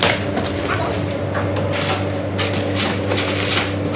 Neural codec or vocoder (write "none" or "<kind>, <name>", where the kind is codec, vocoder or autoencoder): none